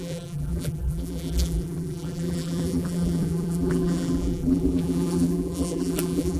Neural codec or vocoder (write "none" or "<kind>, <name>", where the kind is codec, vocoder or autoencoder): vocoder, BigVGAN v2